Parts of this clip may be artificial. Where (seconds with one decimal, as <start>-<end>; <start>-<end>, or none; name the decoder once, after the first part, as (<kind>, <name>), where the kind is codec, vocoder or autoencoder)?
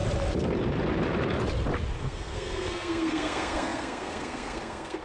2.0-5.0 (codec, SNAC)